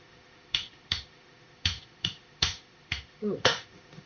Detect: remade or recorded remade